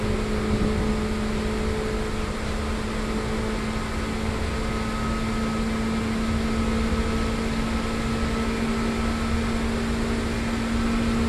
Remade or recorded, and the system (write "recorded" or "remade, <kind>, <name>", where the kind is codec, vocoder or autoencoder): recorded